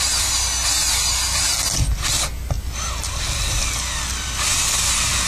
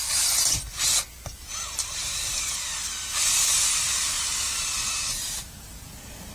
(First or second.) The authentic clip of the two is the first